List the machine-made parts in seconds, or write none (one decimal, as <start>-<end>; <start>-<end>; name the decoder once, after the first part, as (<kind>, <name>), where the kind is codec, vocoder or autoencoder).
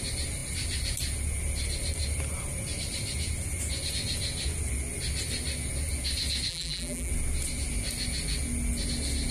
6.5-7.1 (vocoder, BigVGAN v2)